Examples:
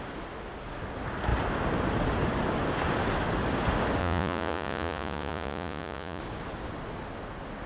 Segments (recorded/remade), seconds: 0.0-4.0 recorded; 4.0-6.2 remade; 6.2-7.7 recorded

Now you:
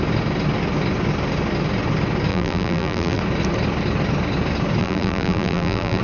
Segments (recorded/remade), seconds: 0.0-2.3 recorded; 2.3-3.2 remade; 3.2-4.8 recorded; 4.8-6.0 remade